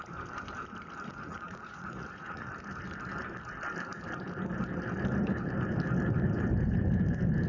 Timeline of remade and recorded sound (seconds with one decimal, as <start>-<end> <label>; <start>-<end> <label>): 0.0-1.1 recorded; 1.1-2.5 remade; 2.5-7.5 recorded